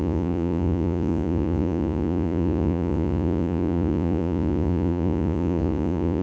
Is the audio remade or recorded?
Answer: remade